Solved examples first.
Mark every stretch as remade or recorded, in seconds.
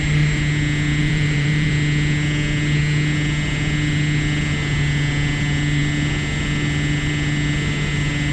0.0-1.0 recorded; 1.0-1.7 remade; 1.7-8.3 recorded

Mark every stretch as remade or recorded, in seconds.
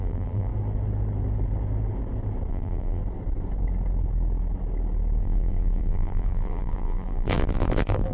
0.0-0.5 remade; 0.5-2.5 recorded; 2.5-3.0 remade; 3.0-5.2 recorded; 5.2-8.1 remade